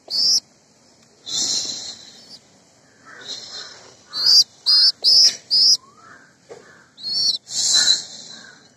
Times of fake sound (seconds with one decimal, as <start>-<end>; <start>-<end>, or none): none